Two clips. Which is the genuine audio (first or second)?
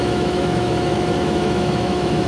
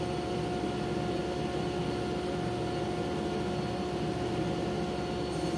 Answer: second